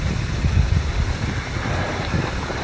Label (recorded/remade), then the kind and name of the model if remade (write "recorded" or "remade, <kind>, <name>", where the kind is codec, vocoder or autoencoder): recorded